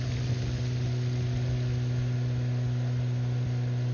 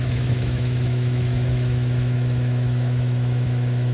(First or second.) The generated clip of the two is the second